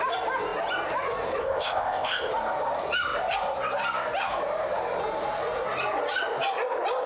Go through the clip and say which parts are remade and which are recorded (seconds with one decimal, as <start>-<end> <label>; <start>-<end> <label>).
0.0-1.4 recorded; 1.4-2.3 remade; 2.3-7.1 recorded